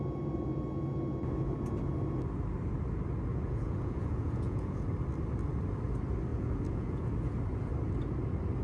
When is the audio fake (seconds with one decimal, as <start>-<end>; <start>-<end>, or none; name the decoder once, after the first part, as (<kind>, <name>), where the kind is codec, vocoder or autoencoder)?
3.3-4.9 (vocoder, Vocos); 6.3-7.1